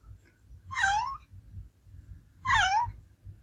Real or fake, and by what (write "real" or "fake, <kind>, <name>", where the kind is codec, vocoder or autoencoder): real